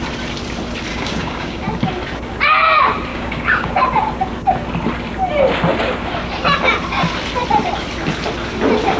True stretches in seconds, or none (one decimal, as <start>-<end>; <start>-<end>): 0.0-0.9; 1.6-3.1; 3.7-9.0